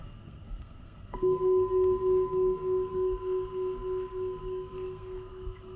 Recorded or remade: remade